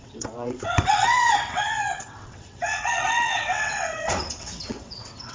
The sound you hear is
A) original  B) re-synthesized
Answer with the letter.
B